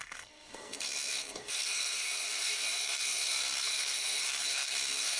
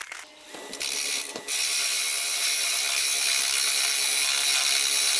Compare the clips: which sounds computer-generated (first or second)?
first